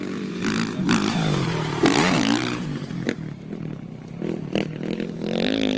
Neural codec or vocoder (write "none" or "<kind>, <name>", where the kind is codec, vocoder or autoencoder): vocoder, BigVGAN v2